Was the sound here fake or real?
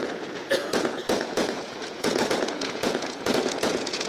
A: fake